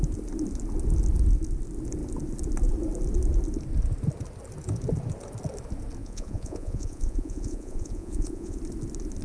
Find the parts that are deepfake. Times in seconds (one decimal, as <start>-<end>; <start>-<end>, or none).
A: 6.0-8.6